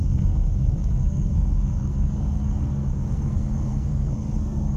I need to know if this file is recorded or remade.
remade